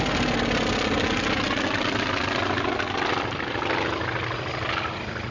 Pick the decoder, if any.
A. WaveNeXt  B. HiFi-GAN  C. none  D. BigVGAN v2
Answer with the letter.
C